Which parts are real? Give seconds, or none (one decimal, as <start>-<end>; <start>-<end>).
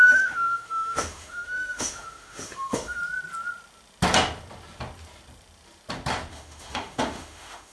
3.0-6.3